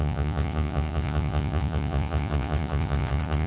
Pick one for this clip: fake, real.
fake